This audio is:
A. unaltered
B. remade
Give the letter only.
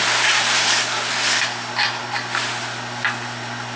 A